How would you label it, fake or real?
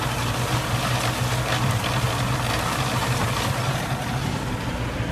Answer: real